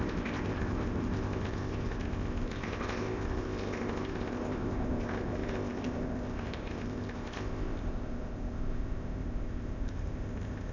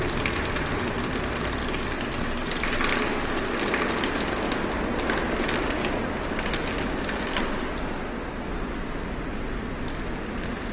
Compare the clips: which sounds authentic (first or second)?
second